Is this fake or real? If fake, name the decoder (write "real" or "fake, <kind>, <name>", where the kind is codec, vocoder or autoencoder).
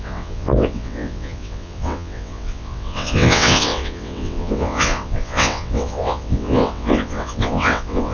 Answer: fake, vocoder, WaveNeXt